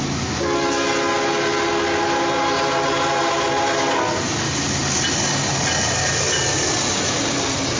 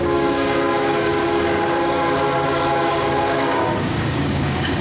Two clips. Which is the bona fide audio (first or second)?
first